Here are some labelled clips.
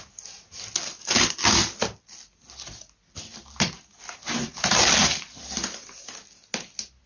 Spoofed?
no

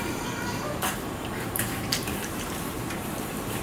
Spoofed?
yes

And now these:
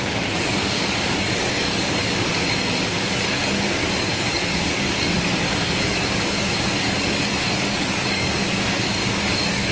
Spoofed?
yes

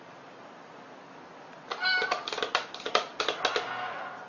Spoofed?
no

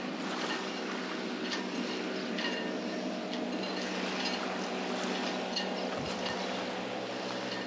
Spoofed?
no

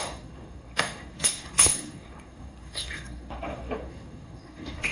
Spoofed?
yes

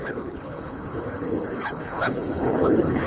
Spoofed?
yes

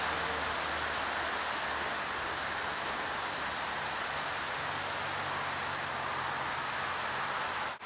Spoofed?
no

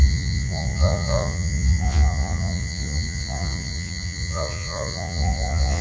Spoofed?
yes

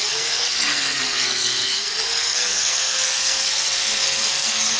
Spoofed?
yes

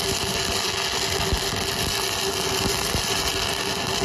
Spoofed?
no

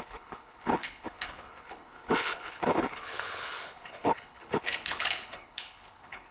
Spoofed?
yes